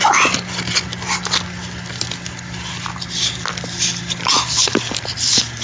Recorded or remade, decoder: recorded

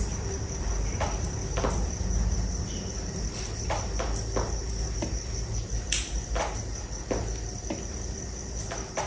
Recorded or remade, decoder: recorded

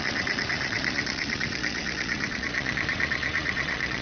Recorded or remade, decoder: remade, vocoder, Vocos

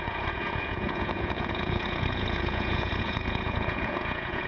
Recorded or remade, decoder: remade, vocoder, Vocos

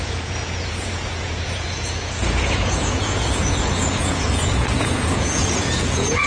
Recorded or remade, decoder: remade, vocoder, Vocos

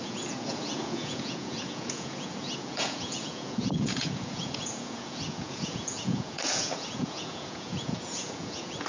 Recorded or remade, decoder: remade, vocoder, Vocos